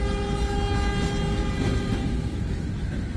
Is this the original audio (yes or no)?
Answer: yes